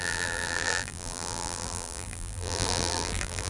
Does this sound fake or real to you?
fake